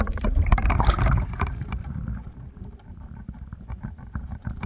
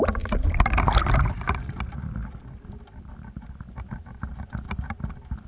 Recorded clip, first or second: second